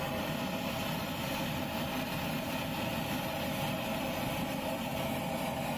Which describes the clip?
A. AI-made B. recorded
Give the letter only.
B